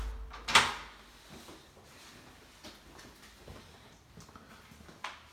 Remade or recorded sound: recorded